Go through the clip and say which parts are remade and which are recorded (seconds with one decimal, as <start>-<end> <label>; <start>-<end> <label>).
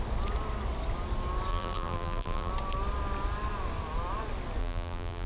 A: 0.0-1.5 recorded; 1.5-2.5 remade; 2.5-4.6 recorded; 4.6-5.3 remade